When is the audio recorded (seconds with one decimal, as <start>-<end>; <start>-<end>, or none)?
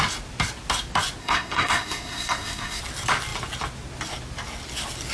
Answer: 0.0-1.2; 2.8-5.1